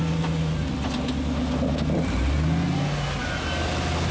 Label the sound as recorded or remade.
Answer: recorded